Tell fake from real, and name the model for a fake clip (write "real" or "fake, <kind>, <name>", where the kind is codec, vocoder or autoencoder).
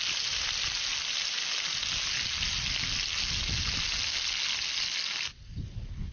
real